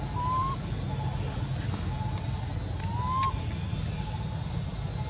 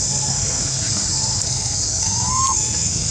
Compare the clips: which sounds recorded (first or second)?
first